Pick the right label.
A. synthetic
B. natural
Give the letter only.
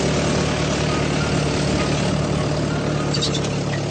B